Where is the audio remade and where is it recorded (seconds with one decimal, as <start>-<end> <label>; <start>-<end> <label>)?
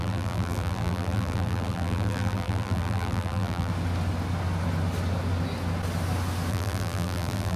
0.0-3.7 remade; 3.7-6.5 recorded; 6.5-7.6 remade